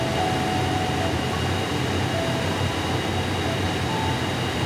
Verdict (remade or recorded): recorded